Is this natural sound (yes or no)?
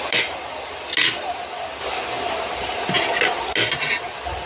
yes